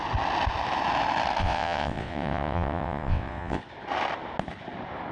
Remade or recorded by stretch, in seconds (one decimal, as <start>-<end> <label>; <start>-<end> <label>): 0.0-1.4 recorded; 1.4-3.6 remade; 3.6-5.1 recorded